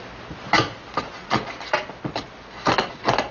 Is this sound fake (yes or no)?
no